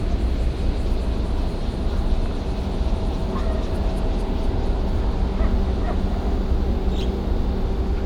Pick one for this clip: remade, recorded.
recorded